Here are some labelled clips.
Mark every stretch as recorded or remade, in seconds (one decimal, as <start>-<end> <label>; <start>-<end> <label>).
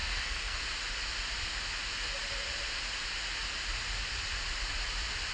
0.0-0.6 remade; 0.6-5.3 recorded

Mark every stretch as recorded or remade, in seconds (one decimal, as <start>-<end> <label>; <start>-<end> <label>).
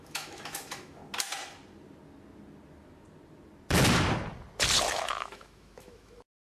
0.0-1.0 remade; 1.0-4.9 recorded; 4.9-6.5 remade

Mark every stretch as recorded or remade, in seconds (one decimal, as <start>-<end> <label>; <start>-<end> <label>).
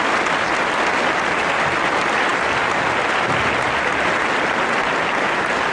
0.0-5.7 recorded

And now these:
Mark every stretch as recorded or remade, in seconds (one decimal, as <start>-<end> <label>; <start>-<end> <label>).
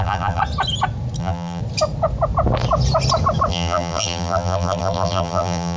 0.0-0.4 remade; 0.4-1.2 recorded; 1.2-1.6 remade; 1.6-3.5 recorded; 3.5-5.8 remade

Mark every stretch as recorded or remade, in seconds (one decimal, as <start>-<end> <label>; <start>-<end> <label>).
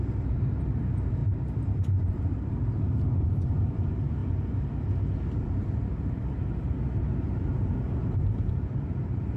0.0-4.2 remade; 4.2-5.4 recorded; 5.4-9.4 remade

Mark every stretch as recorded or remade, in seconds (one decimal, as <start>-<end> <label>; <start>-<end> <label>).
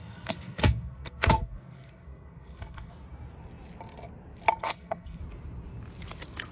0.0-2.9 remade; 2.9-4.5 recorded; 4.5-5.2 remade; 5.2-6.5 recorded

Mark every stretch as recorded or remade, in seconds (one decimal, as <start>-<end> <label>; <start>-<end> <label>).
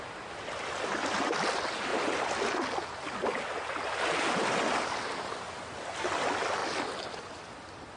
0.0-8.0 recorded